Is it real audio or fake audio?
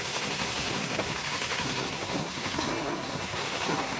fake